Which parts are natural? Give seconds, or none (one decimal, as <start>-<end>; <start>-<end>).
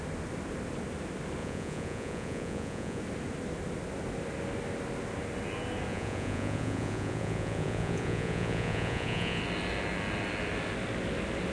0.0-1.4; 3.0-5.9; 9.4-11.5